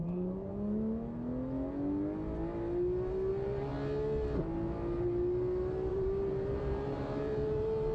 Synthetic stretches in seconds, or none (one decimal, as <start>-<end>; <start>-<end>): 0.0-0.5; 3.3-3.7; 5.9-7.9